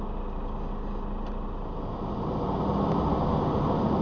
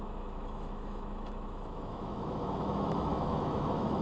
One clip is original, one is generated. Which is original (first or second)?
first